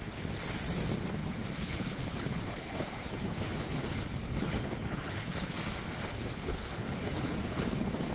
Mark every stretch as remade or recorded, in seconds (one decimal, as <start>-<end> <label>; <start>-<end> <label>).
0.0-1.2 recorded; 1.2-5.5 remade; 5.5-6.5 recorded; 6.5-8.1 remade